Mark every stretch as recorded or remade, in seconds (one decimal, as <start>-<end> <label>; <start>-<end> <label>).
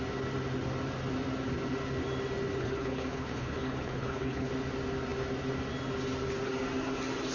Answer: 0.0-2.6 recorded; 2.6-4.5 remade; 4.5-7.3 recorded